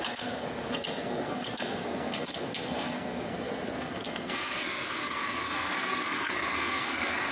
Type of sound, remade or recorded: remade